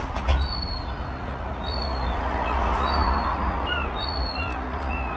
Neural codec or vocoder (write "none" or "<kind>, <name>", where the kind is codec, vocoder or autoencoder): vocoder, Vocos